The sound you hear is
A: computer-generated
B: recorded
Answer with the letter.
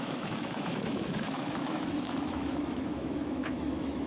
A